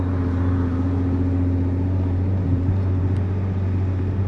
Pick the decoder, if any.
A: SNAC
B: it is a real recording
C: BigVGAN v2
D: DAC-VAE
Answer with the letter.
B